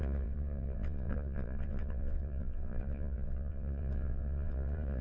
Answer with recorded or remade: remade